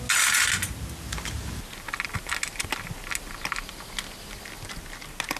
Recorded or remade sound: recorded